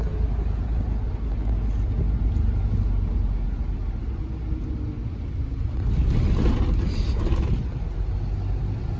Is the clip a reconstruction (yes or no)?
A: no